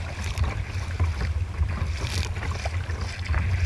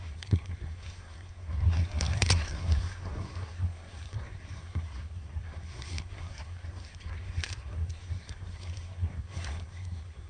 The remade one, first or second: second